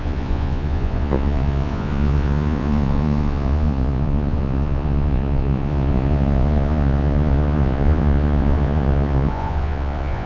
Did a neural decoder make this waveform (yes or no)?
yes